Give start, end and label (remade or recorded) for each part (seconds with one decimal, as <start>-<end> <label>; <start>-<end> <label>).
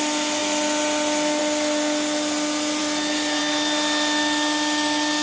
0.0-5.2 recorded